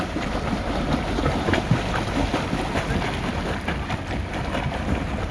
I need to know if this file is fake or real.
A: real